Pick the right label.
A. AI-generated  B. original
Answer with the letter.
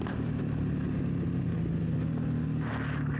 B